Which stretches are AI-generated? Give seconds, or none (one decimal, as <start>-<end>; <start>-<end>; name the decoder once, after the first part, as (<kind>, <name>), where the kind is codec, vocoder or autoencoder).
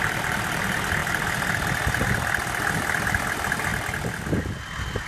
none